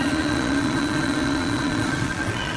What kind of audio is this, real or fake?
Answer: fake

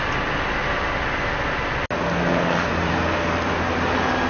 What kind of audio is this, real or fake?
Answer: real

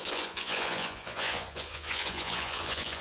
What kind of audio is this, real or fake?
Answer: fake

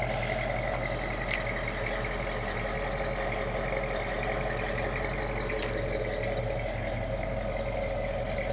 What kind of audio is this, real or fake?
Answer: real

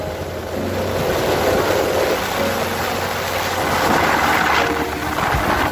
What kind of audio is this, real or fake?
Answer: real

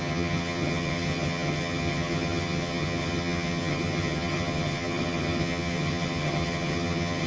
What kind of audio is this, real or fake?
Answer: fake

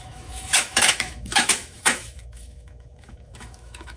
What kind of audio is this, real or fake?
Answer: fake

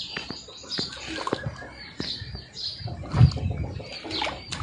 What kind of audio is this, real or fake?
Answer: real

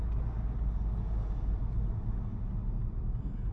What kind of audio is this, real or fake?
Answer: real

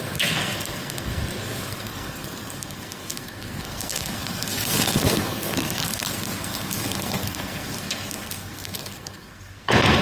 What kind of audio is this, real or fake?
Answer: fake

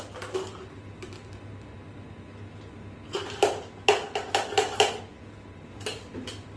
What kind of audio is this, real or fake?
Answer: real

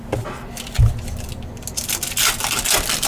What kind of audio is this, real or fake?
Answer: real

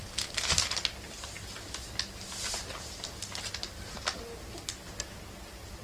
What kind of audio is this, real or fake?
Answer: real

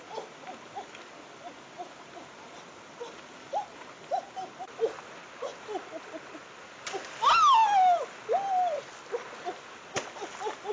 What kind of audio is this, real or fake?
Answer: real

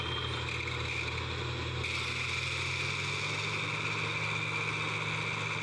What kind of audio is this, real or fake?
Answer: real